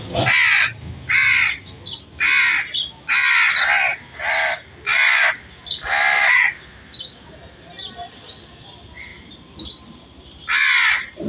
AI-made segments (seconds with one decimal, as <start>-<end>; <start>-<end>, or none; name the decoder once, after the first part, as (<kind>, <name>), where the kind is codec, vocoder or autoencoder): none